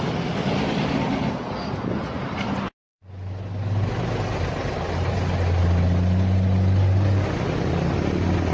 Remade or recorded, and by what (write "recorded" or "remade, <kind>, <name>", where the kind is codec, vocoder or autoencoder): recorded